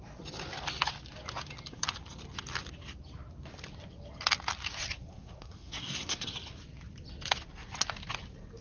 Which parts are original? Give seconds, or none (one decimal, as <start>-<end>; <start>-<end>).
0.0-5.1; 6.3-8.6